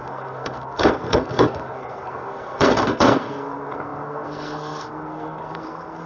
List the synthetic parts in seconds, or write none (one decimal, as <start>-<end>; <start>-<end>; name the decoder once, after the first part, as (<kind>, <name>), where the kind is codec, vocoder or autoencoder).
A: 0.0-6.1 (codec, SNAC)